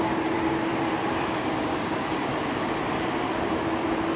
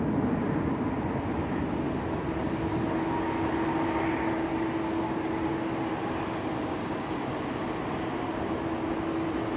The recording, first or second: second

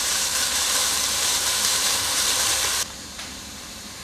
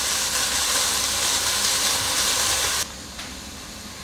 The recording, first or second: second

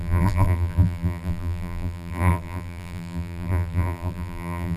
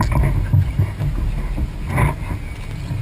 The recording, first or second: second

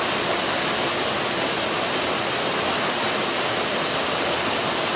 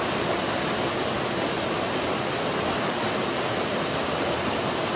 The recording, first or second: first